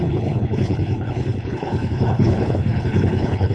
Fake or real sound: fake